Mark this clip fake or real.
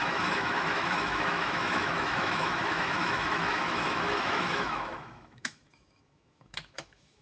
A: fake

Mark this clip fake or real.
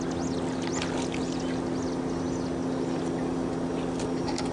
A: real